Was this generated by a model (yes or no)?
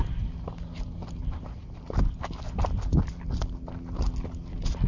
no